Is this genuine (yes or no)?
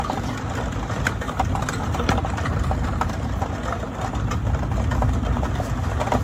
yes